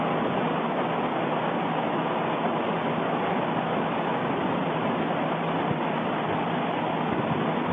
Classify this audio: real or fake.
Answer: real